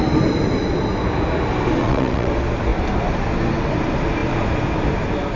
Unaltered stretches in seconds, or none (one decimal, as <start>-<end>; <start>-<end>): 0.0-1.8; 2.3-5.4